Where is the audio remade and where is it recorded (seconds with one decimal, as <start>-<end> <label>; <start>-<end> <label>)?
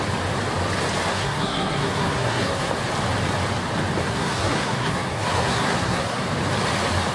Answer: 0.0-1.1 recorded; 1.1-2.7 remade; 2.7-4.0 recorded; 4.0-6.3 remade; 6.3-7.1 recorded